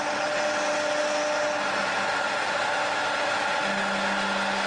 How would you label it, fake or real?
real